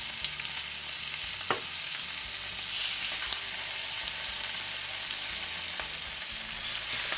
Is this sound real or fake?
real